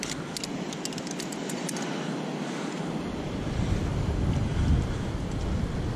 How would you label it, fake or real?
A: real